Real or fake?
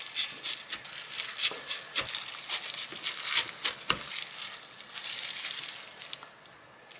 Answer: real